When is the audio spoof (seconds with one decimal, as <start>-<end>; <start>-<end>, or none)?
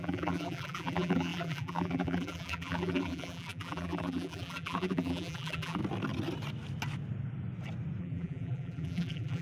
0.0-5.8; 8.0-9.4